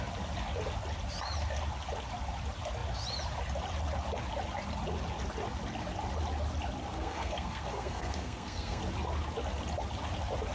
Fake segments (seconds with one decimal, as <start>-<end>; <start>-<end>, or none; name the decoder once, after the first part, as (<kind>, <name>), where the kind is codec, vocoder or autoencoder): 6.9-8.8 (codec, SNAC)